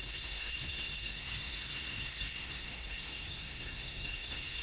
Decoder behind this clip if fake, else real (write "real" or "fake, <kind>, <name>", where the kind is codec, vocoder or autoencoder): fake, codec, SNAC